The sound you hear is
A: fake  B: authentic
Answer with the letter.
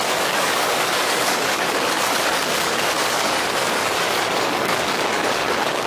A